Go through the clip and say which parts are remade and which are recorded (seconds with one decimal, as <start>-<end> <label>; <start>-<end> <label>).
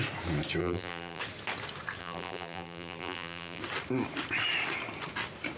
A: 0.0-0.6 recorded; 0.6-1.2 remade; 1.2-2.0 recorded; 2.0-3.6 remade; 3.6-5.6 recorded